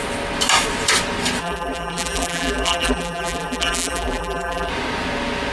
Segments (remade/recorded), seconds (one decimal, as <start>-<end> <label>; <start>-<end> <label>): 0.0-1.4 recorded; 1.4-4.7 remade; 4.7-5.5 recorded

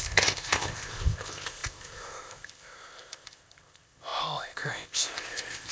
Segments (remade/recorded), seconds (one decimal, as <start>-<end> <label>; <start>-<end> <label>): 0.0-5.7 remade